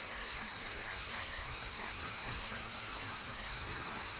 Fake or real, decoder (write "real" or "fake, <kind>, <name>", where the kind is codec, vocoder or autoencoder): fake, codec, SNAC